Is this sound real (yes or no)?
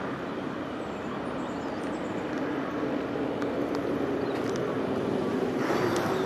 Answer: yes